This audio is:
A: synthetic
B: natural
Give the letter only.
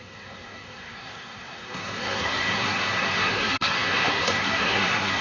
A